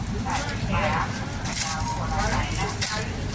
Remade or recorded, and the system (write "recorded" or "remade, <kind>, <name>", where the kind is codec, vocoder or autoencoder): recorded